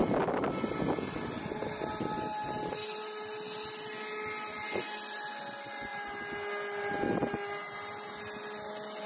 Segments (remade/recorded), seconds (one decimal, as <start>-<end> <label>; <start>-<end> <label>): 0.0-9.1 recorded